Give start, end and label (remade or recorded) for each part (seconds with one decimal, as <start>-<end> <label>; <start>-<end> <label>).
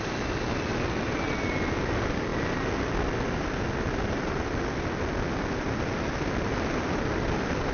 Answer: 0.0-7.7 recorded